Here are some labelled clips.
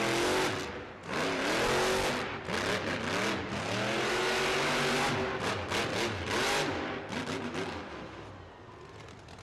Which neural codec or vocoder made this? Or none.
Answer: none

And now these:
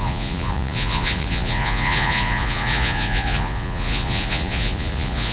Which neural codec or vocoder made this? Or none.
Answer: vocoder, Vocos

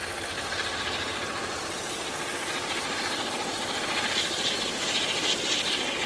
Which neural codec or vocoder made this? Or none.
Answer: none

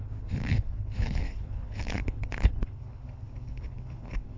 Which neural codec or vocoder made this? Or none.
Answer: codec, HILCodec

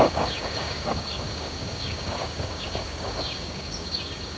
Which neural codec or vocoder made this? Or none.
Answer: codec, DAC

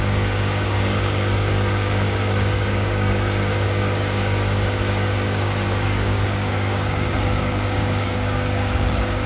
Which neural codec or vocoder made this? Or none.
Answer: codec, DAC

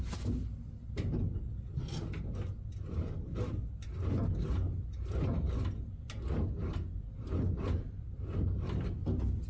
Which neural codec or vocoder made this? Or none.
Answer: none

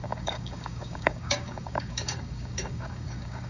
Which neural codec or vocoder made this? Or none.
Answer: codec, DAC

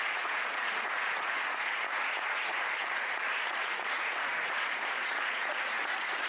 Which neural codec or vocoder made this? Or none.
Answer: vocoder, Vocos